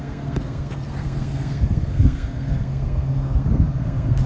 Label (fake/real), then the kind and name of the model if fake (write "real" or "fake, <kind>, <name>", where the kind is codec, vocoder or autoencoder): fake, codec, SNAC